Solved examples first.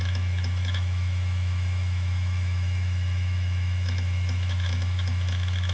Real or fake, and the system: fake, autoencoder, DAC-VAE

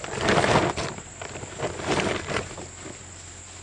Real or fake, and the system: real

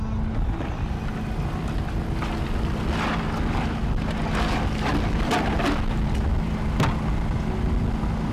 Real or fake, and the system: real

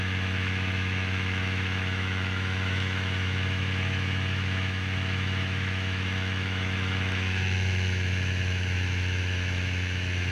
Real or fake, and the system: fake, autoencoder, DAC-VAE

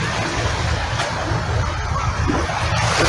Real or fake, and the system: real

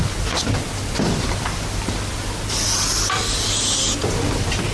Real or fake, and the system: real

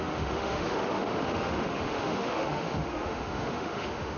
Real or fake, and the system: fake, autoencoder, DAC-VAE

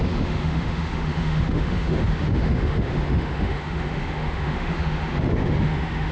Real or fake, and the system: fake, autoencoder, DAC-VAE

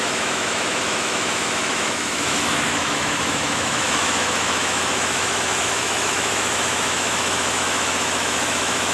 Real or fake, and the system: fake, autoencoder, DAC-VAE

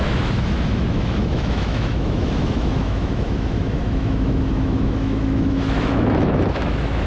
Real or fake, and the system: fake, autoencoder, DAC-VAE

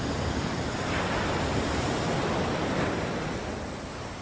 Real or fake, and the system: real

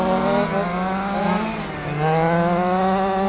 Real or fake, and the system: real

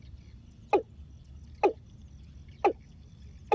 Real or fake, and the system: real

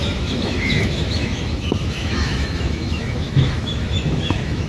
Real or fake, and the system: fake, autoencoder, DAC-VAE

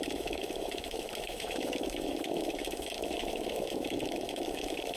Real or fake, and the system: fake, autoencoder, DAC-VAE